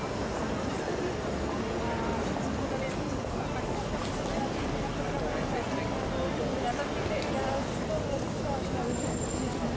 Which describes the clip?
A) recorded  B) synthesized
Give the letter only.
A